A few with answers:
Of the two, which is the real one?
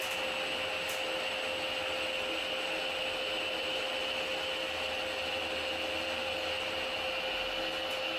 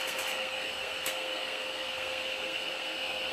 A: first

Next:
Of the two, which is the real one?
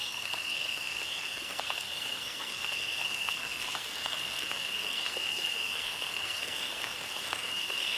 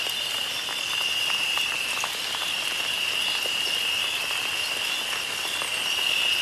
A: second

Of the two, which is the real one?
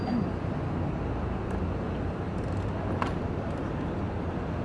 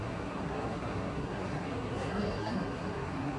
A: first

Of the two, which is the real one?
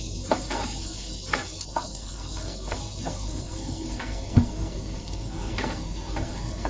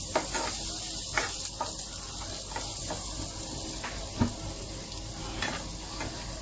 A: second